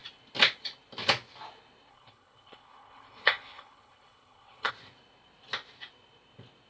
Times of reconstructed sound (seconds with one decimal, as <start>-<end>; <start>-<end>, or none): 1.9-4.7